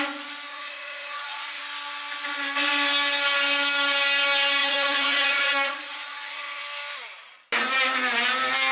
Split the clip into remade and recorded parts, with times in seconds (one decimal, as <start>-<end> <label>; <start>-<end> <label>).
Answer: 0.0-0.5 recorded; 0.5-1.6 remade; 1.6-4.6 recorded; 4.6-6.6 remade; 6.6-8.7 recorded